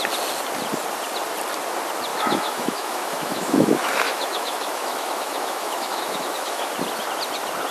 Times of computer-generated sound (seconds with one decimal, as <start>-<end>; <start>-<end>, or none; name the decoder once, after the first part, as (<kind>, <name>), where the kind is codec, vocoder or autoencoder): 2.1-6.7 (autoencoder, DAC-VAE)